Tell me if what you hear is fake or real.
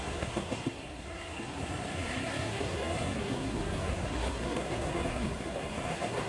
fake